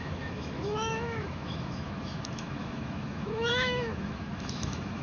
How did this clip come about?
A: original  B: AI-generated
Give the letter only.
B